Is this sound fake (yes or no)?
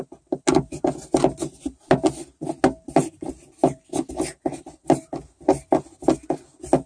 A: no